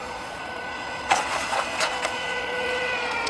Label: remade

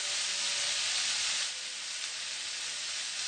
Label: recorded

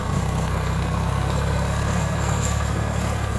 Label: remade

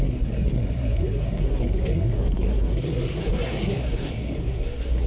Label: remade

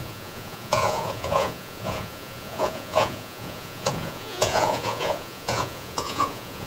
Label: remade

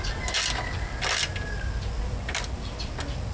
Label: recorded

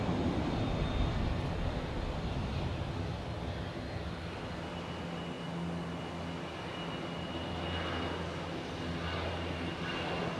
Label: recorded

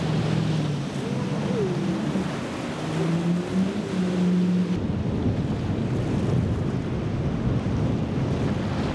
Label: recorded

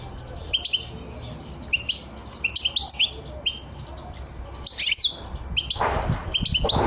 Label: recorded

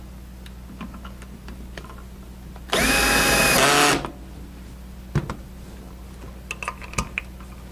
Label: recorded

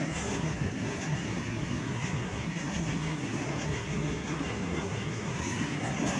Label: remade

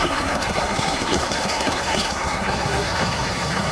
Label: remade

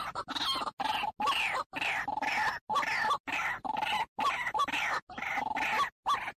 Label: recorded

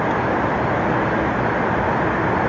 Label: recorded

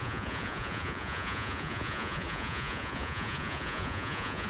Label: remade